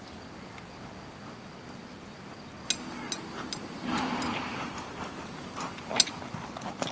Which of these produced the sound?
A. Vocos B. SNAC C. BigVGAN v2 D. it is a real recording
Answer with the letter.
D